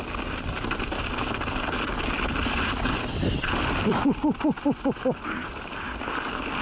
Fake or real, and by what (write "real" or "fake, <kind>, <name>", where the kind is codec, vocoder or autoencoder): fake, vocoder, BigVGAN v2